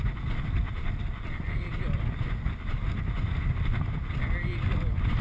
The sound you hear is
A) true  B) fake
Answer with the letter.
A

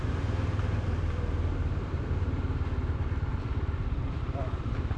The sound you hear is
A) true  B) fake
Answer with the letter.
B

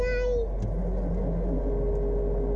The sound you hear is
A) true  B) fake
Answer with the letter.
A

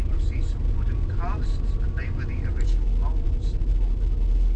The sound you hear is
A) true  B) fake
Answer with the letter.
A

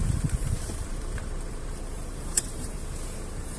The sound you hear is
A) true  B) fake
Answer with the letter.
B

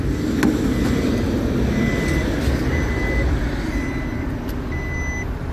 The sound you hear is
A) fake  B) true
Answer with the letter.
B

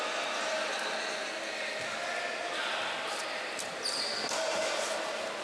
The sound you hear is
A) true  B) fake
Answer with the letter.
A